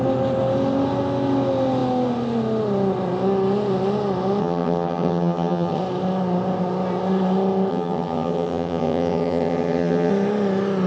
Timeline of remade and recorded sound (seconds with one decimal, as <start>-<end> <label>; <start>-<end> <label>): 0.0-4.4 recorded; 4.4-5.8 remade; 5.8-7.7 recorded; 7.7-10.1 remade; 10.1-10.9 recorded